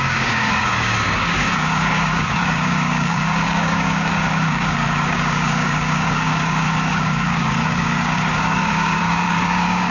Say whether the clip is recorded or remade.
remade